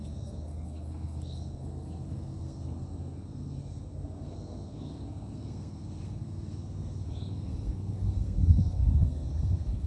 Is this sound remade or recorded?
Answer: remade